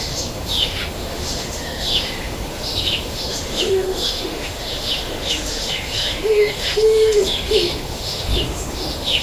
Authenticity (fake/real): fake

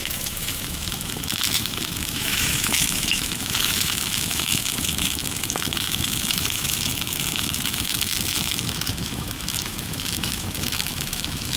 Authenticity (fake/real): fake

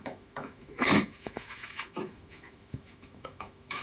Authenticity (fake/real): fake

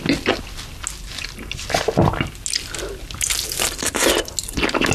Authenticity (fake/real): real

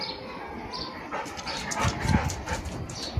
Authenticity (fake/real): real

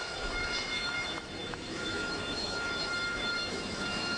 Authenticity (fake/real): fake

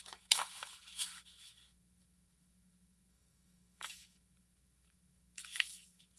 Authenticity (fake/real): fake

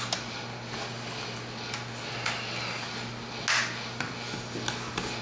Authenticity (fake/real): real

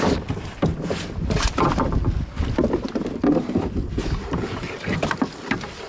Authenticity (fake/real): real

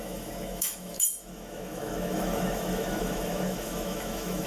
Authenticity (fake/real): fake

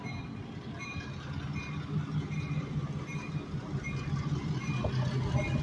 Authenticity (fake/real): real